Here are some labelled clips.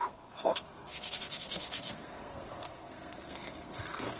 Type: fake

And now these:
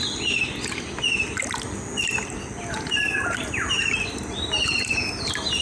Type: real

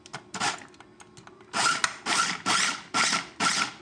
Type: real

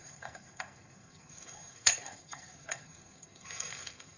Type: fake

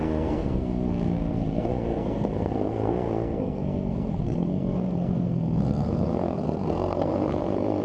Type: fake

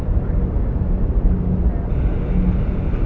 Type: real